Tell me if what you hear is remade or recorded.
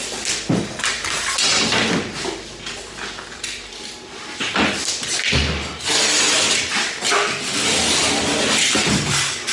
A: recorded